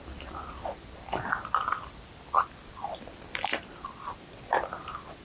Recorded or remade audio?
recorded